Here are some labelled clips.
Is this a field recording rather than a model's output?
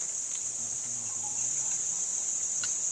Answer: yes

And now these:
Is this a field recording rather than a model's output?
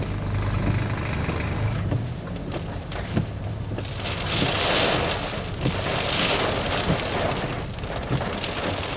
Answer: yes